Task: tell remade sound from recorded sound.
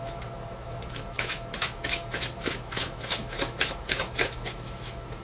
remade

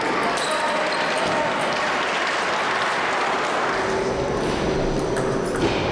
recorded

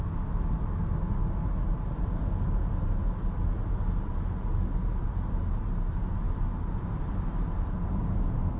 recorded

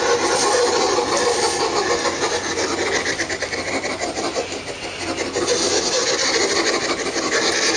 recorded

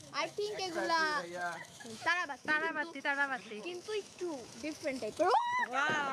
remade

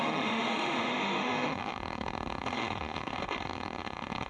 remade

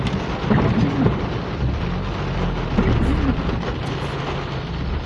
recorded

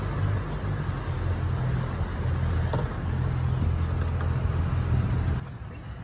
recorded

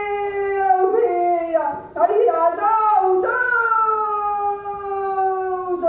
recorded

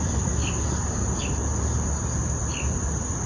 recorded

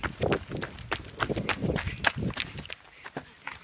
recorded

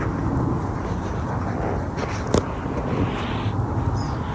recorded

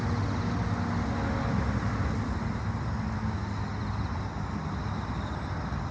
recorded